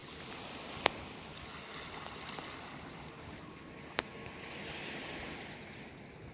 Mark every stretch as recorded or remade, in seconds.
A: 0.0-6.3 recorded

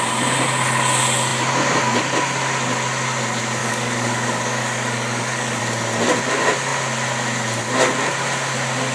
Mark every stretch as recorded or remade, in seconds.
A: 0.0-3.6 recorded; 3.6-5.6 remade; 5.6-8.9 recorded

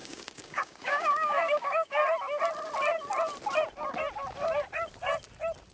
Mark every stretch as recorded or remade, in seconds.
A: 0.0-2.0 remade; 2.0-5.7 recorded

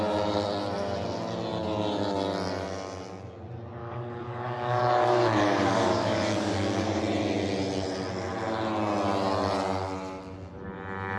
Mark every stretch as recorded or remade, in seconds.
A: 0.0-3.8 recorded; 3.8-7.0 remade; 7.0-11.2 recorded

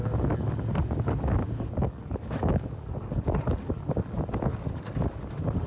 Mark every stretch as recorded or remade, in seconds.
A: 0.0-0.7 recorded; 0.7-4.1 remade; 4.1-4.5 recorded; 4.5-5.2 remade; 5.2-5.7 recorded

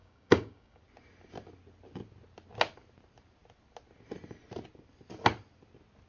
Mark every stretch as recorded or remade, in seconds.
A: 0.0-0.8 remade; 0.8-6.1 recorded